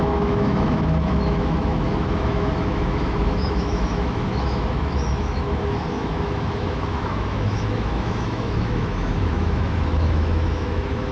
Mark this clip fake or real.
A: fake